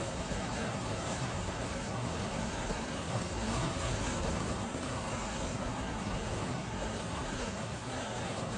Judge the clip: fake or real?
fake